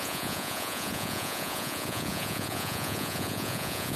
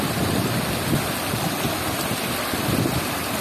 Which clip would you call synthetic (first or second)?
first